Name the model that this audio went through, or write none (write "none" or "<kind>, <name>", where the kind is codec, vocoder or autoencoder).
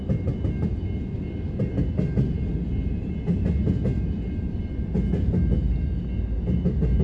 none